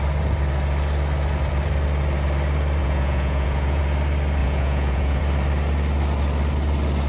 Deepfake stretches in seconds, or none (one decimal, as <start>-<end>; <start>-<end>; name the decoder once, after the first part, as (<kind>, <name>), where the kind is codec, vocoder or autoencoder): 2.8-3.8 (vocoder, Vocos); 4.4-5.2